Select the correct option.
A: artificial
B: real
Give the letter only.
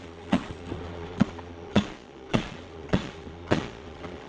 A